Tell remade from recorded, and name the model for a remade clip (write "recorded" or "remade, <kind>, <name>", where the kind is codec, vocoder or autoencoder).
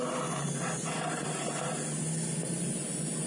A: recorded